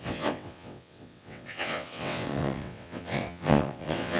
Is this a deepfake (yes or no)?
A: yes